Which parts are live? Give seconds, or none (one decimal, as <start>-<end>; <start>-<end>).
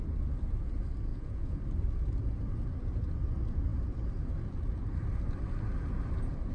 0.0-1.1; 1.6-6.5